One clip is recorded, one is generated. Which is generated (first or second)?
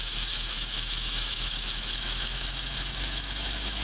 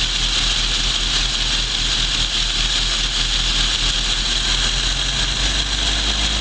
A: first